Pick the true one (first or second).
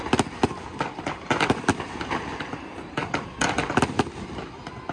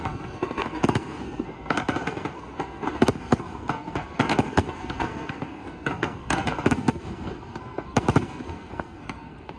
first